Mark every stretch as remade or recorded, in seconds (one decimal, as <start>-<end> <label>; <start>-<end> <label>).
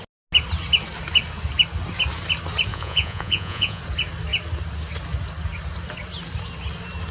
0.0-2.7 recorded; 2.7-3.8 remade; 3.8-7.1 recorded